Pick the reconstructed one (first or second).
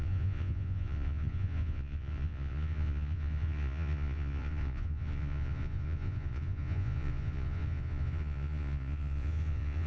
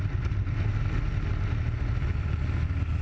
first